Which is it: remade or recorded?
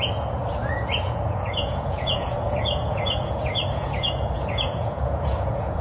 remade